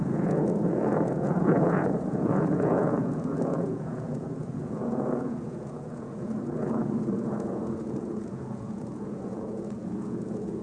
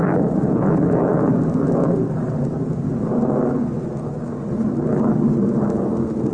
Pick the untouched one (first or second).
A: second